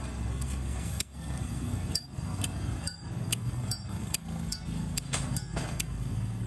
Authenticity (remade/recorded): remade